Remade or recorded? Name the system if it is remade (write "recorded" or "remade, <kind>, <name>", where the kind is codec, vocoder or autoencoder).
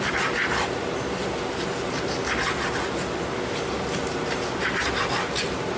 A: recorded